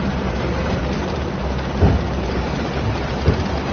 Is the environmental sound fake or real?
fake